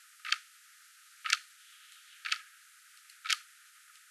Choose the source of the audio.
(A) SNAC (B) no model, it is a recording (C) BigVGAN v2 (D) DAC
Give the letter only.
B